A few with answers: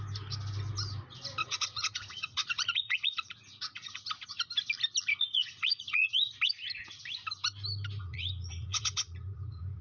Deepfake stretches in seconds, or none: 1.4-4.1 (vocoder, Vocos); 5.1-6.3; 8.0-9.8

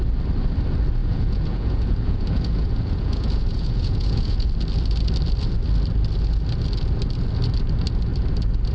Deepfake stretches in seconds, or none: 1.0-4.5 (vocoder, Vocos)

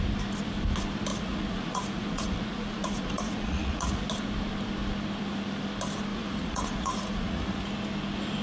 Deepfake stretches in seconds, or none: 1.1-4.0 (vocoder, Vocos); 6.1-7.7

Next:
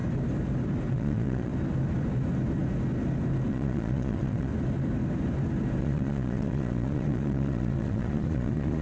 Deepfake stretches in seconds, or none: 0.9-1.5 (vocoder, Vocos); 3.5-4.5; 5.8-8.8

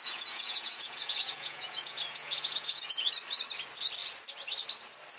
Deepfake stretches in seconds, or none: 0.0-3.1 (vocoder, Vocos)

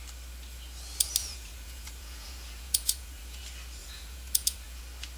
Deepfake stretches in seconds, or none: 1.2-3.4 (vocoder, Vocos); 3.8-4.8

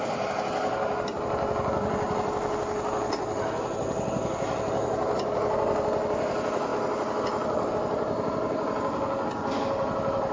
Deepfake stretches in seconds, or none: none

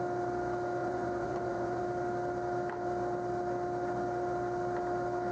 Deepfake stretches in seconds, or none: 0.8-1.8 (vocoder, Vocos)